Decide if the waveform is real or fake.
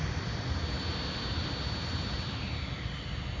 real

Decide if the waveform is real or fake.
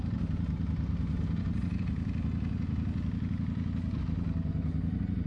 real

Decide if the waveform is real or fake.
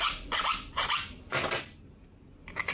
real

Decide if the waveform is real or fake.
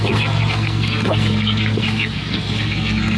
fake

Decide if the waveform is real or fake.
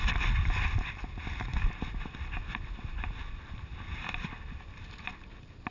real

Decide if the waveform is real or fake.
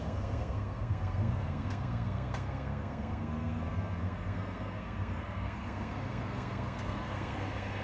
fake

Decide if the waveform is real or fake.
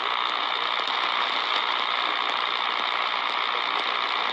real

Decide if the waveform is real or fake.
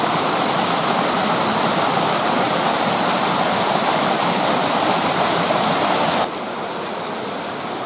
real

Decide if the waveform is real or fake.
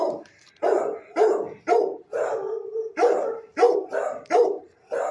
fake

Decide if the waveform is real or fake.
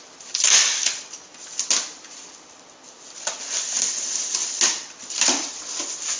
real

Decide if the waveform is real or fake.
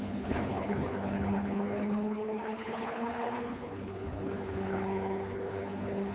fake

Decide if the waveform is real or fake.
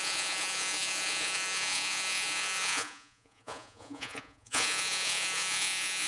fake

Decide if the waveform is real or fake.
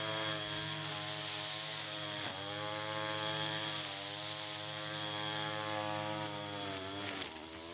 real